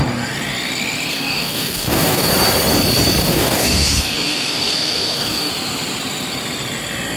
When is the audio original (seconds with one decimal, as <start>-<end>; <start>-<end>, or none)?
0.0-1.1; 2.3-3.2; 5.5-7.2